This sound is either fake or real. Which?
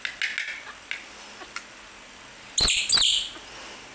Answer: real